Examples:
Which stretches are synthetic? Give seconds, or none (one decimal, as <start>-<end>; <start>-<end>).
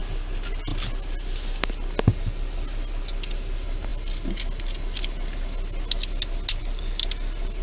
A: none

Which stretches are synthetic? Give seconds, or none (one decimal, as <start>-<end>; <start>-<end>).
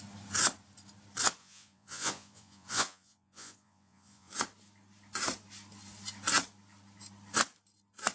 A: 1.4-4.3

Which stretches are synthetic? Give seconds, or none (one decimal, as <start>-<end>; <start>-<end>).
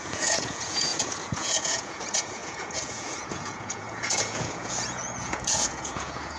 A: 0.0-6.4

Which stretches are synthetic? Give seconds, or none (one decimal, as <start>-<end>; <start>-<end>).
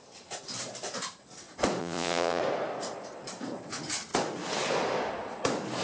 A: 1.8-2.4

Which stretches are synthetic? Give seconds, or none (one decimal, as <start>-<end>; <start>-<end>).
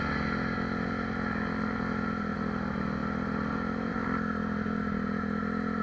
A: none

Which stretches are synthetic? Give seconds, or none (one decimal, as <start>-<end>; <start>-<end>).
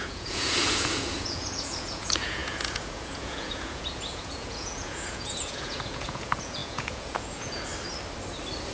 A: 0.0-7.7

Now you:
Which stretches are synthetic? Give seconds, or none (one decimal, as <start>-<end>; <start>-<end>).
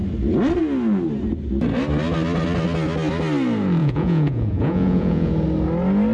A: 3.8-5.3